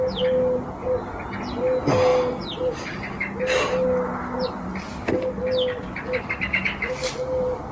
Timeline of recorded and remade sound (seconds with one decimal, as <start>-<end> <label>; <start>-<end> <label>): 0.0-7.7 recorded